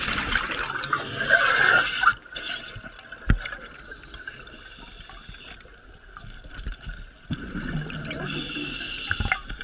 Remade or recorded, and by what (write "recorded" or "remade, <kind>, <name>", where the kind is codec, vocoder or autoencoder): recorded